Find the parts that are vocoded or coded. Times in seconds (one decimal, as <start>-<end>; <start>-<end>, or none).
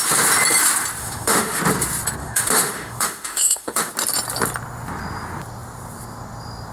1.0-1.6; 2.2-3.9